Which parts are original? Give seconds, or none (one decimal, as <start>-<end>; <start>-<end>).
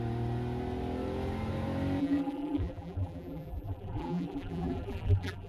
0.0-2.0